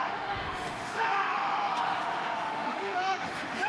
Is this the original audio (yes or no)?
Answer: no